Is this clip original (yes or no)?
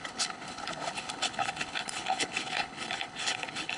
no